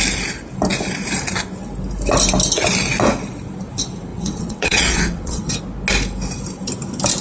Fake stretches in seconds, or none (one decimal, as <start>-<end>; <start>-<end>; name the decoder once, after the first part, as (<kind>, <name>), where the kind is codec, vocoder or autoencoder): 4.1-5.6 (vocoder, WaveNeXt)